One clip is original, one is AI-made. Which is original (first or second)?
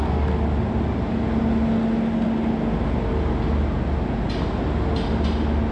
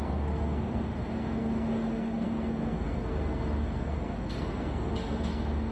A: first